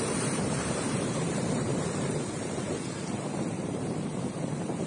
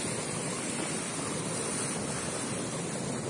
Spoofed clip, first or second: first